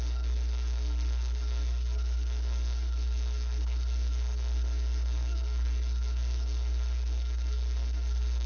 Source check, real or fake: fake